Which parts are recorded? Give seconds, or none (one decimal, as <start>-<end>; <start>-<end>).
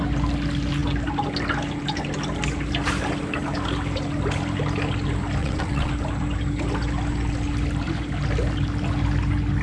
0.0-5.4; 5.9-9.6